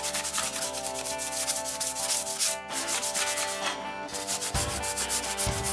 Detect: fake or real real